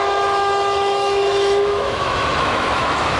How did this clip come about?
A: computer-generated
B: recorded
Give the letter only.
A